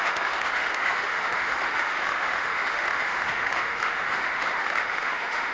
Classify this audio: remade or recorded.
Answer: remade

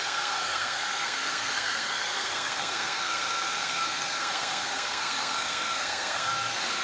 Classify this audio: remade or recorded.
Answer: remade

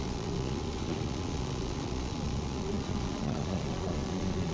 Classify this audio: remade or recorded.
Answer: remade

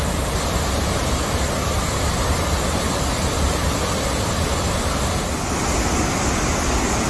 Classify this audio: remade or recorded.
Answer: recorded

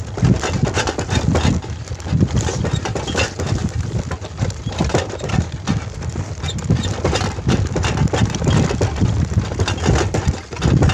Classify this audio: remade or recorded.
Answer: recorded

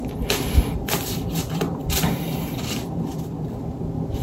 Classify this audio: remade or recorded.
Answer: remade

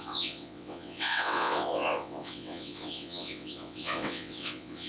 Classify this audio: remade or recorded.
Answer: remade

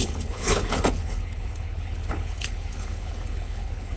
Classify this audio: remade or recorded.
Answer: remade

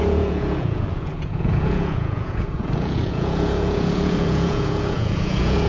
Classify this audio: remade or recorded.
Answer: remade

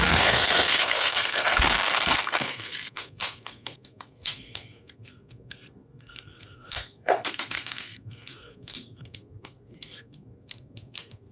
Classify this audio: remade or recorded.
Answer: remade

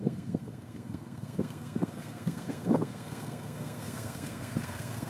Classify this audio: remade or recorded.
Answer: remade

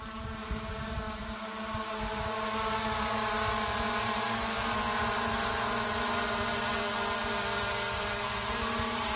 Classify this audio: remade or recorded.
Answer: remade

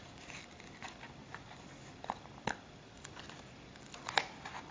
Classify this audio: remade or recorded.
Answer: recorded